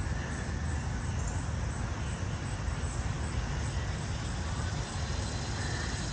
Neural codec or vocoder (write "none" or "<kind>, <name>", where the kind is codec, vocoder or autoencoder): none